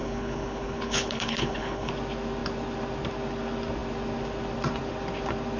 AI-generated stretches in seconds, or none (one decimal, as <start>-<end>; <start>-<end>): 0.0-1.9